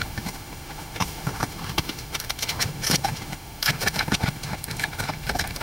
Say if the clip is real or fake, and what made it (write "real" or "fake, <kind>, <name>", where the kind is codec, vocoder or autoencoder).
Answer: fake, autoencoder, DAC-VAE